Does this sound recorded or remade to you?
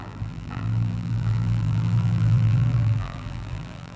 remade